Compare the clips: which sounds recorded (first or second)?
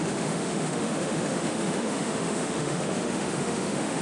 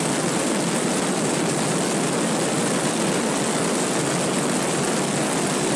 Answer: second